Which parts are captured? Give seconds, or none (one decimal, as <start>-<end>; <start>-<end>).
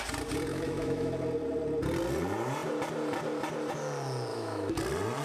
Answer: 0.0-0.5; 1.1-4.3; 4.8-5.2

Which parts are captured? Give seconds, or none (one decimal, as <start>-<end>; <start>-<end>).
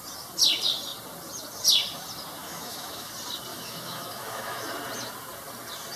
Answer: 0.0-2.4; 3.1-3.5; 4.7-6.0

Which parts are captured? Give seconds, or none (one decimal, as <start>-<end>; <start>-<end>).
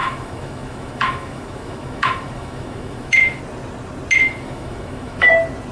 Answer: 3.4-4.2; 5.3-5.7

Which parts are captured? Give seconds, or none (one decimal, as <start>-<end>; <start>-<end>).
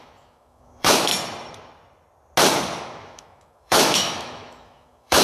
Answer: 1.1-2.8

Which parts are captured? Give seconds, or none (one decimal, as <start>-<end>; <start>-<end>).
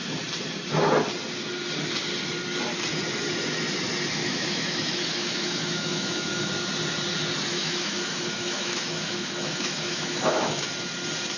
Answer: 0.0-4.2; 6.5-7.5; 10.7-11.4